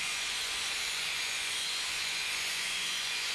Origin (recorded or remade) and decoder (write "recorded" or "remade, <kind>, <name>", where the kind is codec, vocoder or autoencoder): remade, vocoder, Vocos